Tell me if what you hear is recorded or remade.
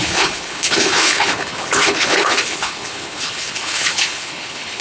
remade